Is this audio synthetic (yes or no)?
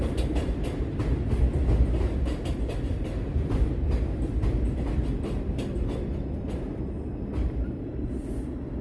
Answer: no